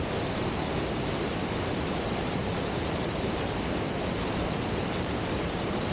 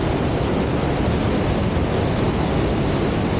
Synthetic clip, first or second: first